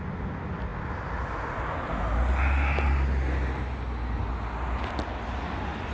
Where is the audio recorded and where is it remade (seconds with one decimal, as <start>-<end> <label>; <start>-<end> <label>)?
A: 0.0-5.9 recorded